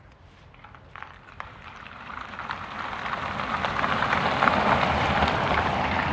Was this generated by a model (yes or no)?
yes